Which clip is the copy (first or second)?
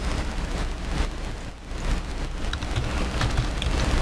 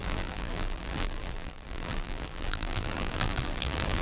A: second